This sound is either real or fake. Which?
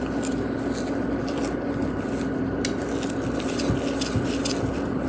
real